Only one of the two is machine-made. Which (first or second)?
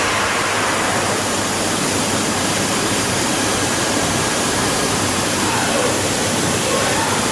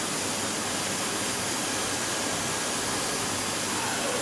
first